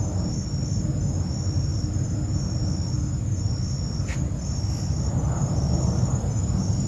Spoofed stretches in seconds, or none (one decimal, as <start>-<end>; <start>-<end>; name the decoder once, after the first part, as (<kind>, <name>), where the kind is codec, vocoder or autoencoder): none